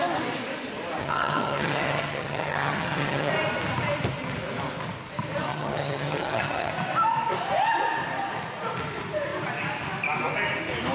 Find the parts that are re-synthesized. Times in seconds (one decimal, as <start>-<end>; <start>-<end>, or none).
1.0-3.3; 5.5-6.7